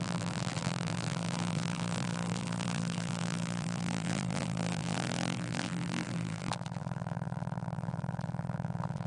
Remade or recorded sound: remade